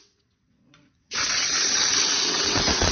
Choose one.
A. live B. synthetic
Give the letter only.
B